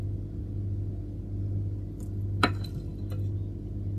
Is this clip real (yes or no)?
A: yes